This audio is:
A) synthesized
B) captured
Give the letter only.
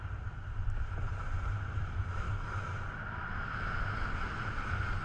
B